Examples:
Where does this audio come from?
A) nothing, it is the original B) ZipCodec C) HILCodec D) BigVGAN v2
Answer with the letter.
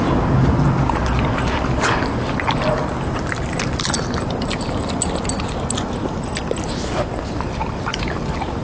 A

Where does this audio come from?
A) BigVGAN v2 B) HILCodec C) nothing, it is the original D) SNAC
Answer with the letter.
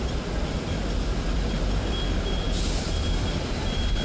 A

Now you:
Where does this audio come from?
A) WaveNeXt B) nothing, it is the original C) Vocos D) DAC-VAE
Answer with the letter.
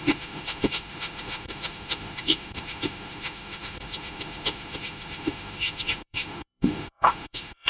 D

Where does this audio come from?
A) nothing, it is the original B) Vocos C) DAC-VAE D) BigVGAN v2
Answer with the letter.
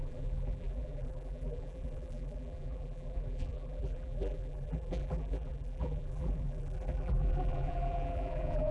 D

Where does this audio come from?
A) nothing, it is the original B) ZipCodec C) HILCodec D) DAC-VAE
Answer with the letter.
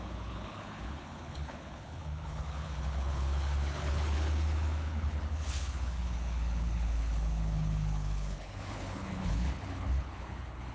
C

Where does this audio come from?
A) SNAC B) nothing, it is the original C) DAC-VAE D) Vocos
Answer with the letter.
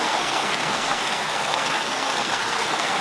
A